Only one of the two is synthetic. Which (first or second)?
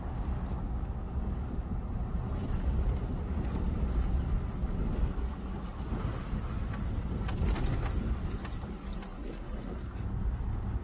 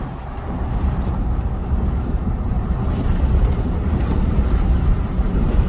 second